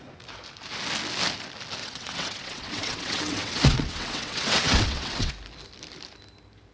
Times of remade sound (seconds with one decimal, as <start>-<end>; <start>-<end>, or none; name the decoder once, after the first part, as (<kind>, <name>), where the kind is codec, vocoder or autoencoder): 1.8-5.3 (vocoder, WaveNeXt)